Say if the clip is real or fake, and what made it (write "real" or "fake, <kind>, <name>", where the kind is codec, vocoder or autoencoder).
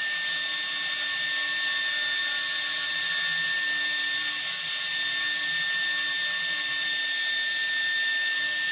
real